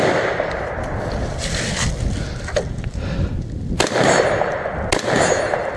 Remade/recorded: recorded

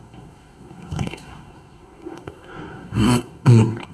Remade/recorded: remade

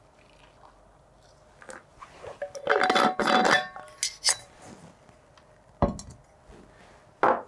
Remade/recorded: recorded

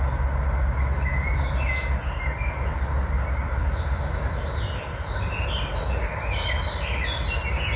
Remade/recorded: recorded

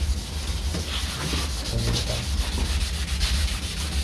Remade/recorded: recorded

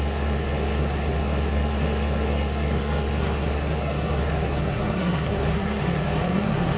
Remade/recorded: remade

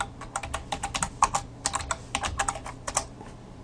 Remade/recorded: recorded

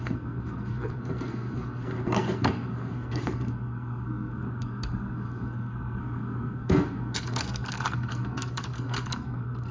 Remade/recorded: remade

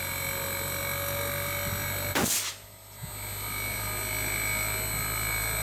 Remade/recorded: recorded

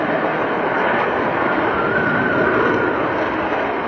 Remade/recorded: recorded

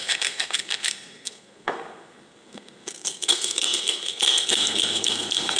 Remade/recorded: remade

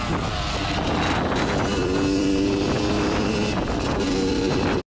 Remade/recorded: recorded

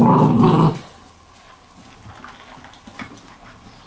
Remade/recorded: recorded